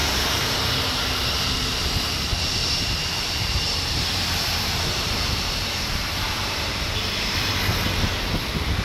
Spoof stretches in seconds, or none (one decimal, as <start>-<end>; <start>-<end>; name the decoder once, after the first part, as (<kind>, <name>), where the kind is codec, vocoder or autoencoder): 0.0-1.0 (vocoder, BigVGAN v2); 2.6-7.6